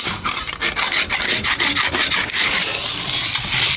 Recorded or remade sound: recorded